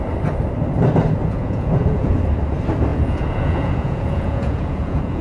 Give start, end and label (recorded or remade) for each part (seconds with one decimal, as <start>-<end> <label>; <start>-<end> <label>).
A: 0.0-1.2 recorded; 1.2-2.1 remade; 2.1-2.9 recorded; 2.9-5.2 remade